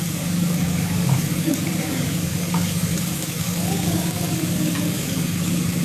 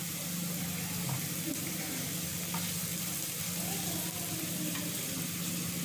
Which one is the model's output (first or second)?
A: first